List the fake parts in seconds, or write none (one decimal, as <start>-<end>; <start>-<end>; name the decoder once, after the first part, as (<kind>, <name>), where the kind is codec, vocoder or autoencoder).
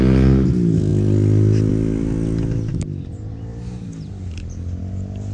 none